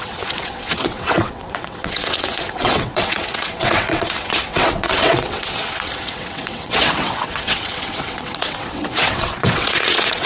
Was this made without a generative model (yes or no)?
no